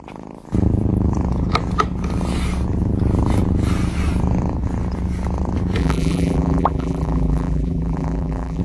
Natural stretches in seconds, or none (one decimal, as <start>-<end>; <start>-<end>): 0.0-5.8